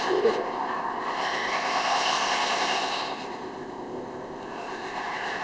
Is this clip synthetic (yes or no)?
yes